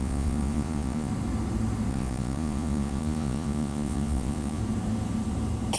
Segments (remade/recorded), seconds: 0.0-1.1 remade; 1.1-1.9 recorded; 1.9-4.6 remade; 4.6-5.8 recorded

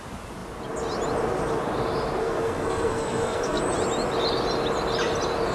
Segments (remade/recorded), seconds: 0.0-2.2 recorded; 2.2-3.6 remade; 3.6-5.5 recorded

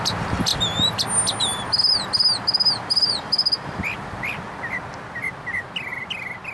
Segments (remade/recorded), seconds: 0.0-5.9 recorded; 5.9-6.5 remade